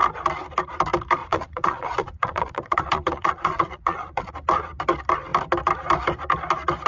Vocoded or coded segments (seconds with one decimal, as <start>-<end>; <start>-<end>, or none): 1.2-4.3